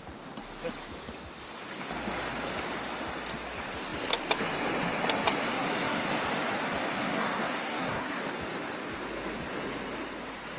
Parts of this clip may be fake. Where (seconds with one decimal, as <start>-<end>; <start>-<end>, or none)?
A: 5.5-6.1; 7.0-8.2